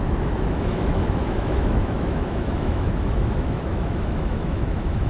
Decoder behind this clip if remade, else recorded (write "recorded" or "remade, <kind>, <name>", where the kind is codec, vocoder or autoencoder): remade, autoencoder, DAC-VAE